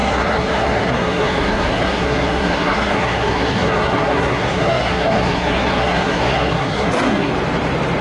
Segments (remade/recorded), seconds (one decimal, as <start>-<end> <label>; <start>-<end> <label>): 0.0-7.3 remade; 7.3-8.0 recorded